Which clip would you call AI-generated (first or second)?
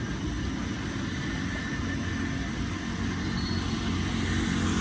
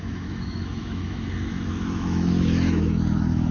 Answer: second